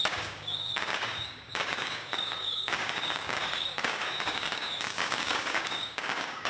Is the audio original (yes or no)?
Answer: no